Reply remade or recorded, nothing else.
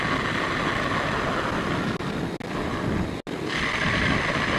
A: recorded